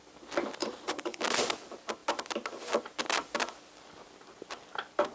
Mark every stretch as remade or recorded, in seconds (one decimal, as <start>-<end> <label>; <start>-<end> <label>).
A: 0.0-0.6 recorded; 0.6-1.2 remade; 1.2-5.1 recorded